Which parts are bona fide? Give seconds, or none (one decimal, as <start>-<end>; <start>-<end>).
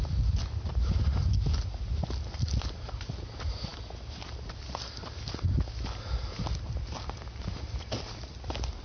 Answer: 0.0-8.8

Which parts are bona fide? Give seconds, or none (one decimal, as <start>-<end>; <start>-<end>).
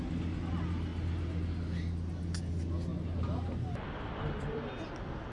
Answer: 0.0-5.3